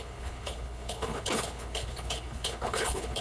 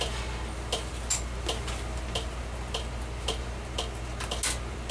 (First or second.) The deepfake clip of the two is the first